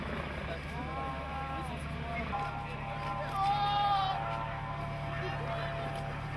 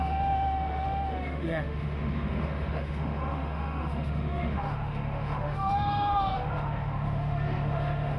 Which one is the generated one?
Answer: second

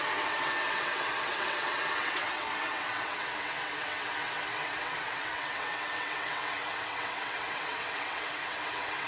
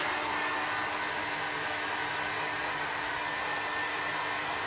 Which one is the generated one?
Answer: first